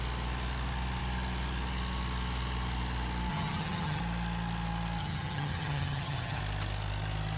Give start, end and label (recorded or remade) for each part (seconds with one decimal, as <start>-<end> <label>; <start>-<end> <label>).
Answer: 0.0-3.3 recorded; 3.3-4.0 remade; 4.0-5.0 recorded; 5.0-6.4 remade; 6.4-7.4 recorded